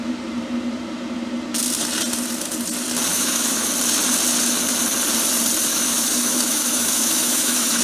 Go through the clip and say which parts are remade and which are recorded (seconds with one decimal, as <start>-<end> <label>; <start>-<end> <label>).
0.0-3.1 recorded; 3.1-3.7 remade; 3.7-5.7 recorded; 5.7-7.8 remade